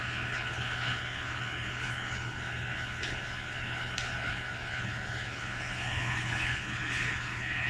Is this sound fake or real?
fake